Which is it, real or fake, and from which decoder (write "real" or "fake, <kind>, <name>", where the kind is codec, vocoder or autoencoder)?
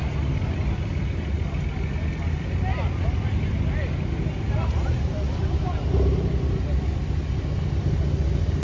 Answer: real